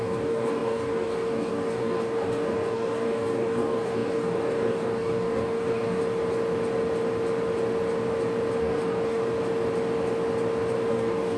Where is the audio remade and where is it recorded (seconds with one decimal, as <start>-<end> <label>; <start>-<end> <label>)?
0.0-6.0 remade; 6.0-8.6 recorded; 8.6-9.2 remade; 9.2-10.9 recorded; 10.9-11.4 remade